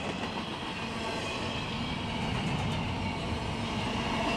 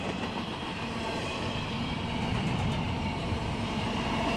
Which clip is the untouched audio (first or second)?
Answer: first